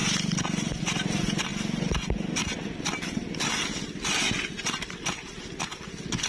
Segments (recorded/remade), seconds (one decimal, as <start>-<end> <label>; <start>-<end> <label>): 0.0-6.3 recorded